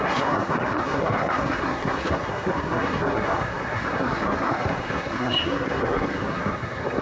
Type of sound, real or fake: fake